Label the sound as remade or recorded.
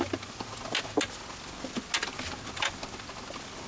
recorded